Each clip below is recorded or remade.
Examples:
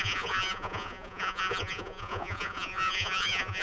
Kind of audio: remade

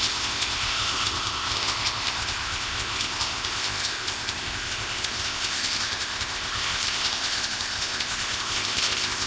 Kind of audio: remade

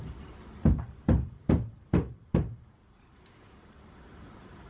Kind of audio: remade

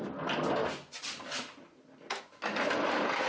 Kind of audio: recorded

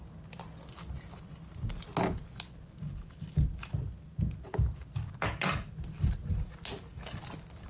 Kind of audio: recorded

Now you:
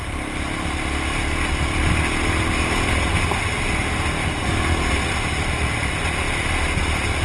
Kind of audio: recorded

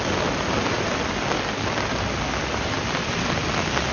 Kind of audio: recorded